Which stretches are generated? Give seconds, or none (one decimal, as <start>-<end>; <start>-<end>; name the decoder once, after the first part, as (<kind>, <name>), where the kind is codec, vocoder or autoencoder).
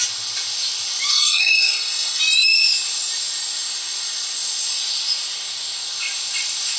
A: 1.1-2.2 (codec, SNAC)